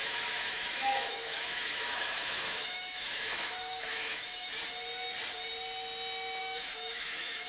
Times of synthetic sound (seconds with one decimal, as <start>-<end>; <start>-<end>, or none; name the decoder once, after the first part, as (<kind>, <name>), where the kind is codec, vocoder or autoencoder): 0.0-4.5 (autoencoder, DAC-VAE); 6.4-7.5